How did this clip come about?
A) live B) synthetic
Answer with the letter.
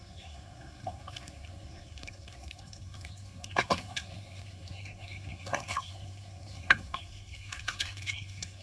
B